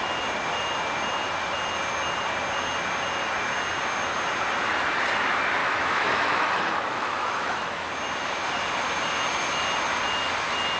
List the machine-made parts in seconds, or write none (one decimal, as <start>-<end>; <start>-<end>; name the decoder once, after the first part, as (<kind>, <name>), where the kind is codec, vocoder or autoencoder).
5.6-7.9 (autoencoder, DAC-VAE)